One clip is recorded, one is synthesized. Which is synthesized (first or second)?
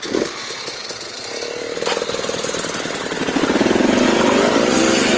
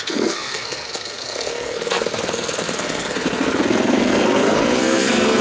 second